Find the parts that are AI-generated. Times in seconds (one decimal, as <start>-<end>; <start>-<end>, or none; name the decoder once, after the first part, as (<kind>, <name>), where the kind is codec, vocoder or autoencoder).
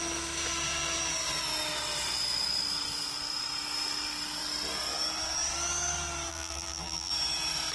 6.3-7.1 (vocoder, BigVGAN v2)